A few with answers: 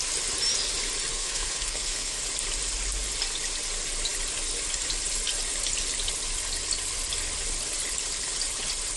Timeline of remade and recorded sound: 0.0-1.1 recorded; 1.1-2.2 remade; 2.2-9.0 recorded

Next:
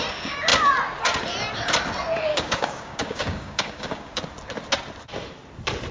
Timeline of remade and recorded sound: 0.0-2.3 recorded; 2.3-4.2 remade; 4.2-5.9 recorded